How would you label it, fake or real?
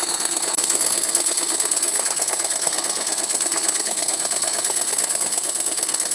fake